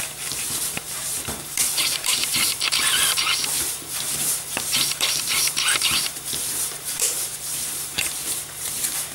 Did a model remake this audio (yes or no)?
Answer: yes